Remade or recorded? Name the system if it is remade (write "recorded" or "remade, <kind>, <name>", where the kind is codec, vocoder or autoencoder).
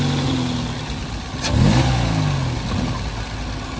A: recorded